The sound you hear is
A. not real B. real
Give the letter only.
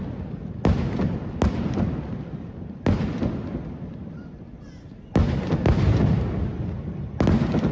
B